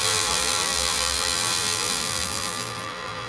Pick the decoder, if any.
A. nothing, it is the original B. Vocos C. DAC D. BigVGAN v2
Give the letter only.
D